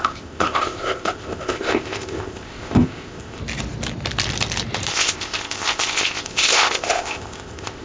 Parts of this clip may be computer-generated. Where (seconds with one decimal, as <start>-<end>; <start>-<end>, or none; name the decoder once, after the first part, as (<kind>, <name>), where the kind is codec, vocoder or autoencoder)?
0.0-3.4 (codec, ZipCodec); 4.9-7.8